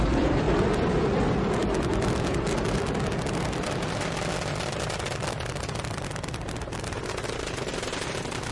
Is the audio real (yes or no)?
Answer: no